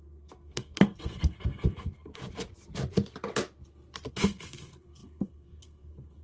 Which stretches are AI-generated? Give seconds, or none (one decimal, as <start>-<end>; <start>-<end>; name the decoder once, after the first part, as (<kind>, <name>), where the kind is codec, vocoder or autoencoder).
0.0-2.1 (codec, SNAC); 4.1-6.2